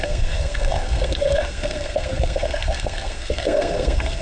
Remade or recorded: remade